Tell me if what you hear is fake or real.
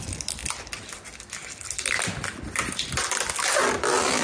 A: real